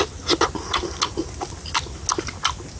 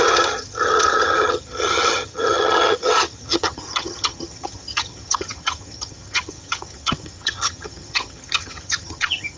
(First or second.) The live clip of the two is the first